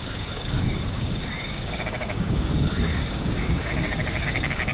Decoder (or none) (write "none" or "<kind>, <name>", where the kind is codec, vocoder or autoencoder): codec, DAC